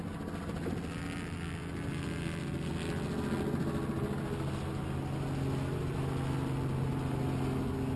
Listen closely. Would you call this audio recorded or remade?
recorded